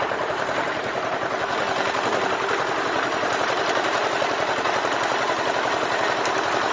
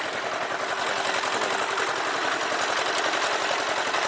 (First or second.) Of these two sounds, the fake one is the first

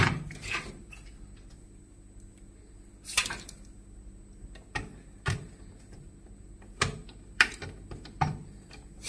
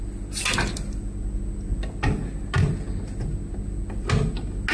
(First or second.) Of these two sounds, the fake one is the first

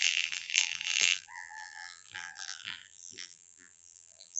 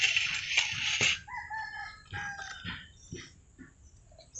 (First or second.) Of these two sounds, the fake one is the first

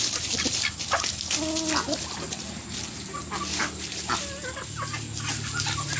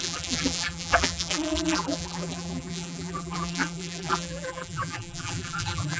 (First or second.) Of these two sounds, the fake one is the second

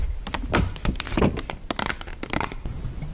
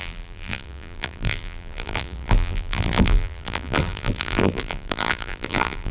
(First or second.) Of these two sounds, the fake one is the second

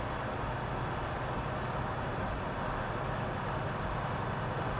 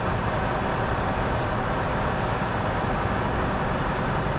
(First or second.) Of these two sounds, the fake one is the second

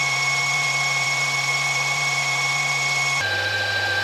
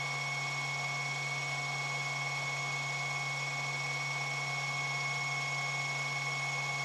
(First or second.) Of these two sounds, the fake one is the first